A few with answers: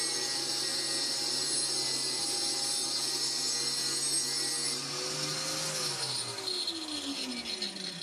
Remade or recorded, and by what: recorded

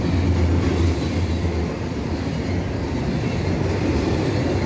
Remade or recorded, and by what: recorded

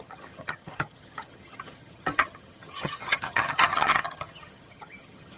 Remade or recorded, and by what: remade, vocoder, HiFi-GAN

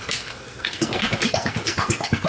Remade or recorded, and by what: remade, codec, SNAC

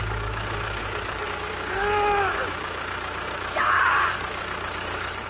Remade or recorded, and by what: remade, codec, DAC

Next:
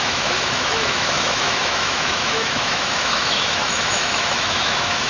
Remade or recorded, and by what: remade, autoencoder, DAC-VAE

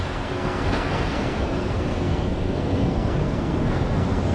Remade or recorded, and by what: remade, codec, SNAC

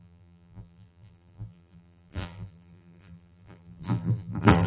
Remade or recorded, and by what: remade, vocoder, BigVGAN v2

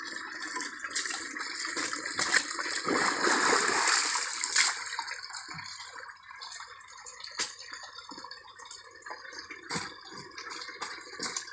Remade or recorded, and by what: recorded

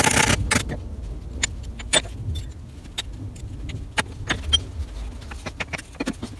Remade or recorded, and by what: recorded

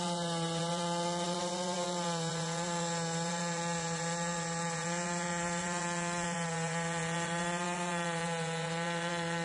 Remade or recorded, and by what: remade, vocoder, Vocos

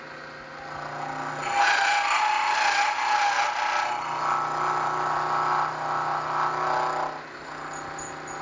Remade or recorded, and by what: recorded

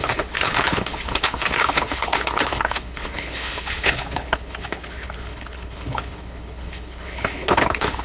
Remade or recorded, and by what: remade, codec, HILCodec